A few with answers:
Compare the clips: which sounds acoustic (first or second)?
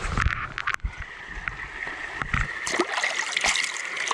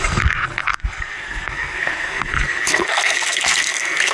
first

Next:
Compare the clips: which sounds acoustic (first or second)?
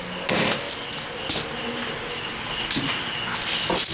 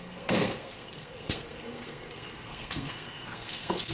first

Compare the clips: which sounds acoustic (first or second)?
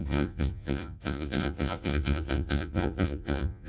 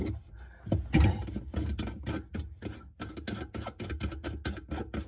second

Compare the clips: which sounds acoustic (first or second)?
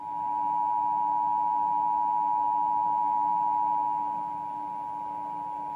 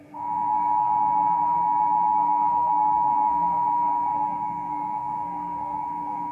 first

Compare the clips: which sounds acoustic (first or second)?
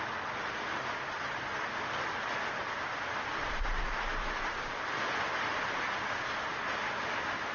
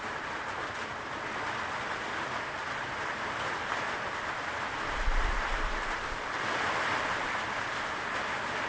first